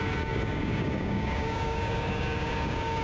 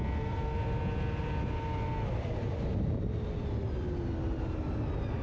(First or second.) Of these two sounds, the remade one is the first